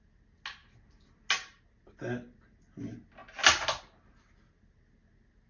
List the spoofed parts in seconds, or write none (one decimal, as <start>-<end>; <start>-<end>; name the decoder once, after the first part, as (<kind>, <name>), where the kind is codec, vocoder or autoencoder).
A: none